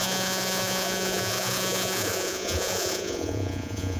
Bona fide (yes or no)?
no